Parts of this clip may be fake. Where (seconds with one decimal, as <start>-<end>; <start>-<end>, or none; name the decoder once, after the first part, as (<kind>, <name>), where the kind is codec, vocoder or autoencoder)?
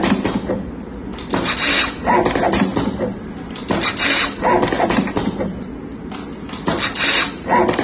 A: none